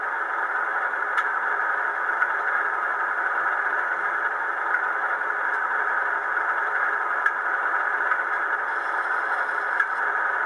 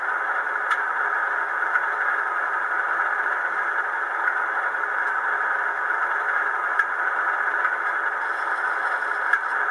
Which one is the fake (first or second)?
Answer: first